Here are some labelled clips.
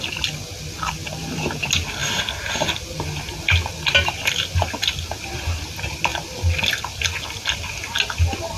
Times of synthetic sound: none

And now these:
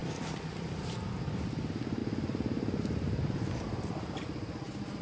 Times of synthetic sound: 0.0-0.9 (vocoder, BigVGAN v2)

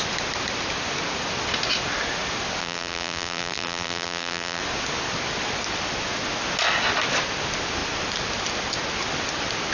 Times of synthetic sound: 2.6-4.6 (vocoder, BigVGAN v2)

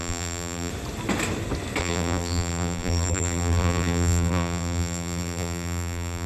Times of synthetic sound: 0.0-0.7 (vocoder, BigVGAN v2); 1.8-6.3